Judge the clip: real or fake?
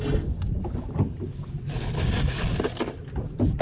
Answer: real